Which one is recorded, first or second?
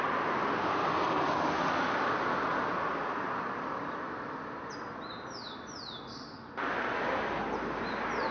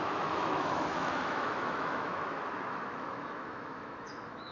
first